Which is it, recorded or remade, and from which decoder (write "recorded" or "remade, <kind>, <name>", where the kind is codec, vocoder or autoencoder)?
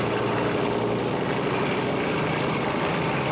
recorded